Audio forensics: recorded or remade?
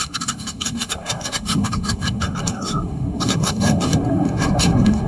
remade